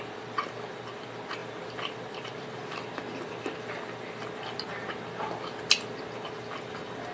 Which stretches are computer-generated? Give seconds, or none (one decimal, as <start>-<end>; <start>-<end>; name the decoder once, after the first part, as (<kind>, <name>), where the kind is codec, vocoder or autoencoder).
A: none